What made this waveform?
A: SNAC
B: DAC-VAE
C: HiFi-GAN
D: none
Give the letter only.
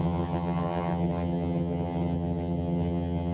C